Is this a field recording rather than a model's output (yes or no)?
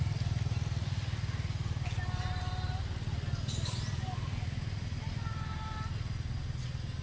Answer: yes